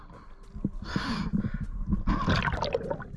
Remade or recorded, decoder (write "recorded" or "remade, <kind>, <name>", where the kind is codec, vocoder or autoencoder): recorded